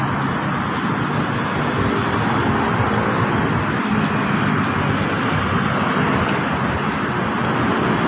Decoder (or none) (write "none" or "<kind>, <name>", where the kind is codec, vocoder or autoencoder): none